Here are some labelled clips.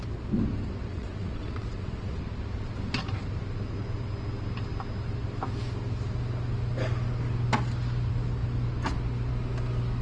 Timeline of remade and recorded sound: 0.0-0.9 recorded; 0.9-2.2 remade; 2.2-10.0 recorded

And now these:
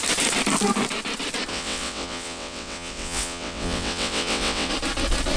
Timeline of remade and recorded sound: 0.0-1.5 recorded; 1.5-4.7 remade; 4.7-5.4 recorded

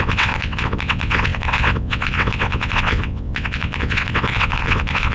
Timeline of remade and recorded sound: 0.0-5.1 remade

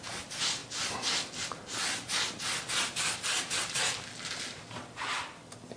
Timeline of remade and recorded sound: 0.0-5.8 recorded

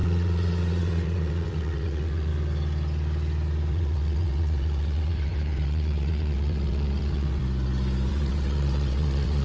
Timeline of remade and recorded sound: 0.0-2.3 remade; 2.3-3.7 recorded; 3.7-7.4 remade; 7.4-8.1 recorded; 8.1-9.4 remade

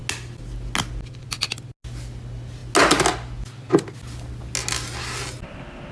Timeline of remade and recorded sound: 0.0-5.9 recorded

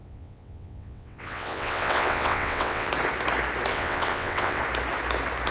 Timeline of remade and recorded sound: 0.0-2.9 remade; 2.9-3.7 recorded; 3.7-4.6 remade; 4.6-5.5 recorded

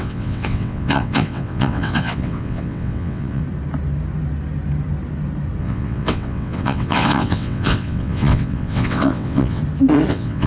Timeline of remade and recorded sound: 0.0-3.4 remade; 3.4-5.6 recorded; 5.6-9.6 remade; 9.6-10.1 recorded; 10.1-10.5 remade